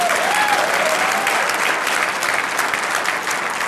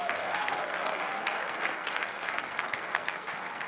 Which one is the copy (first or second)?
second